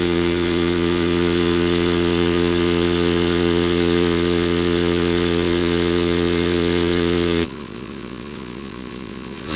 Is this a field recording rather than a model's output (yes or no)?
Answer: no